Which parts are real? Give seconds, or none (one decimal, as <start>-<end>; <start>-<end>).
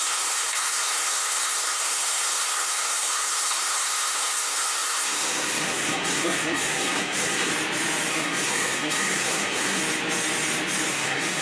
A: 7.5-8.1; 9.8-10.9